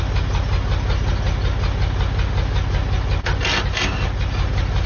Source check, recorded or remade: recorded